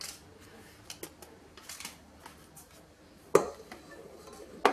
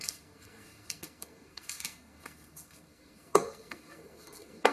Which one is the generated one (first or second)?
second